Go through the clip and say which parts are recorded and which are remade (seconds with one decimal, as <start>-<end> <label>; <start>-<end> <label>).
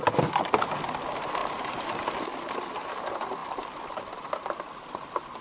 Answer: 0.0-1.4 recorded; 1.4-2.0 remade; 2.0-3.4 recorded; 3.4-4.0 remade; 4.0-5.4 recorded